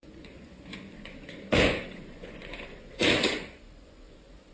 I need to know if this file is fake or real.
fake